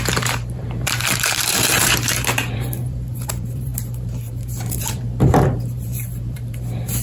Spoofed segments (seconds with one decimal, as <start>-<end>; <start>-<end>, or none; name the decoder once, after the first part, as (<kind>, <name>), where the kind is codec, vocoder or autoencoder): 0.0-7.0 (vocoder, BigVGAN v2)